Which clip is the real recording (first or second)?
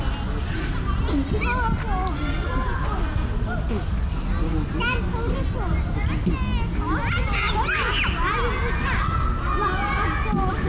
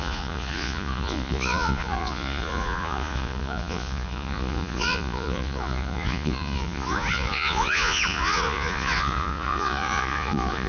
first